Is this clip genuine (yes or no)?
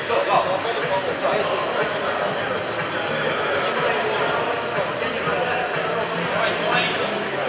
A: yes